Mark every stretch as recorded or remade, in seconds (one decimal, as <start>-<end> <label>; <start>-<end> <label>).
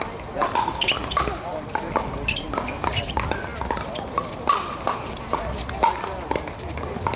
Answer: 0.0-7.2 recorded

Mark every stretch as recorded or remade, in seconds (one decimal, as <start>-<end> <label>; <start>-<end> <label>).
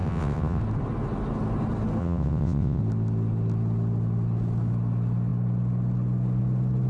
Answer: 0.0-0.6 remade; 0.6-2.0 recorded; 2.0-2.8 remade; 2.8-6.9 recorded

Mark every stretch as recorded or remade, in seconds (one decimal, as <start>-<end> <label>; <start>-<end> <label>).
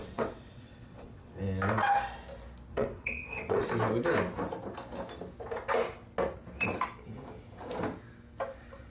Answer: 0.0-1.4 remade; 1.4-2.7 recorded; 2.7-3.6 remade; 3.6-8.9 recorded